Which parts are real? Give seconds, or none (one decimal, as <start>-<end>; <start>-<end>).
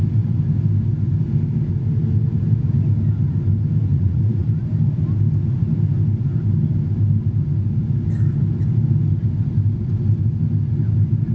0.0-3.9; 4.5-11.3